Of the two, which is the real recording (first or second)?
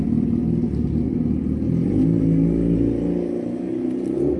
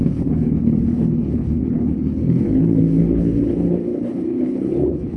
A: first